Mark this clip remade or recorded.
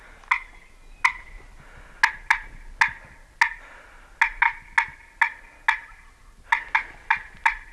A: recorded